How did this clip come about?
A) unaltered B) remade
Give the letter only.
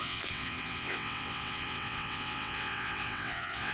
B